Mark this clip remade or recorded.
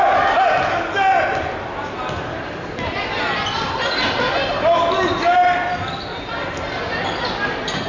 recorded